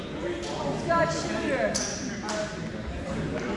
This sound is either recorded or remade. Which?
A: recorded